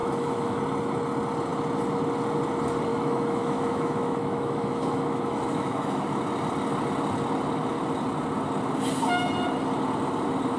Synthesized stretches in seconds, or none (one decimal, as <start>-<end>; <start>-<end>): 0.0-0.6; 2.9-6.0